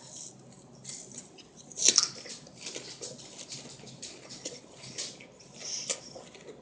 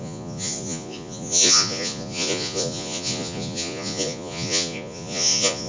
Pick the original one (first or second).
first